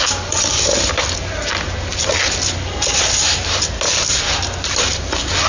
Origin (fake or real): real